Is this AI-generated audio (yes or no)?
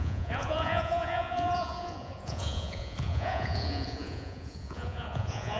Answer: yes